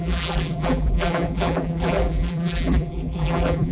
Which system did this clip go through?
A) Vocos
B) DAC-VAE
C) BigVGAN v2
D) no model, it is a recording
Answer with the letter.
C